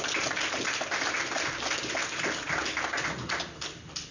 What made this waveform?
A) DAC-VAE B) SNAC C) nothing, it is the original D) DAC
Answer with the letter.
C